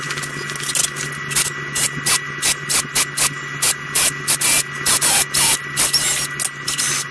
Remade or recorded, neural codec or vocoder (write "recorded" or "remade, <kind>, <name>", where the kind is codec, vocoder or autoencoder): recorded